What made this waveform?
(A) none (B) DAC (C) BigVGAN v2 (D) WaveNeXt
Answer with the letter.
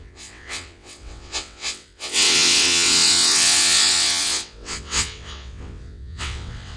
D